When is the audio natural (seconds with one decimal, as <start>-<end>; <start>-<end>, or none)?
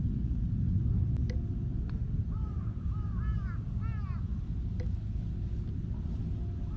0.0-6.8